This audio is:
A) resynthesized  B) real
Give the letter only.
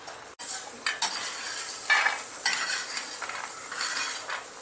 B